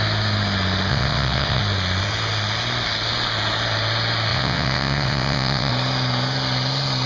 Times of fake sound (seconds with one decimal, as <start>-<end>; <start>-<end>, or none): 0.9-1.6; 4.3-5.7